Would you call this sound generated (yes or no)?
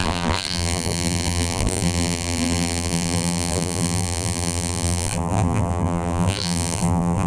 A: yes